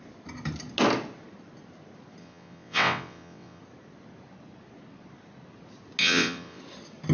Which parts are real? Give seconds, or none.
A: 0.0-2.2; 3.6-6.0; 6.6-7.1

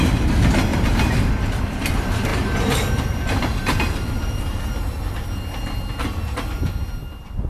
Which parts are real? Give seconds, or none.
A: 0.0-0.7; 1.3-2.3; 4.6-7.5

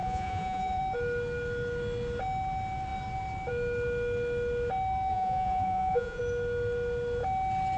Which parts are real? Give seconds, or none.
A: 0.8-5.1; 6.2-7.8

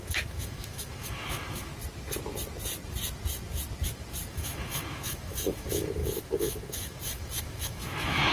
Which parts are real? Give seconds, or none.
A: 1.7-4.3